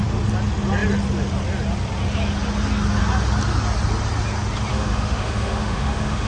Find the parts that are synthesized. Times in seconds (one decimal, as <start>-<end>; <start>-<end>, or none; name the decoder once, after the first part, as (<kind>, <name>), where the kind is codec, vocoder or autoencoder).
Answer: 4.7-6.3 (autoencoder, DAC-VAE)